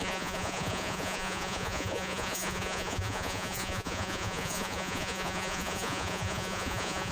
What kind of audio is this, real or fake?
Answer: fake